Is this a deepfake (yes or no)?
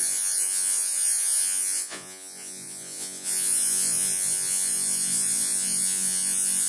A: yes